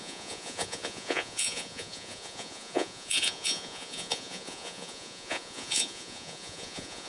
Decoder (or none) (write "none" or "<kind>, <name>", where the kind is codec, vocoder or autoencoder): vocoder, Vocos